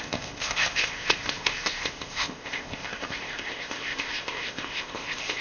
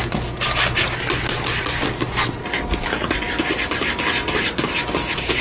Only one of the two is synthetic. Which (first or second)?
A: first